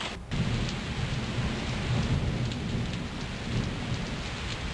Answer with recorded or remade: recorded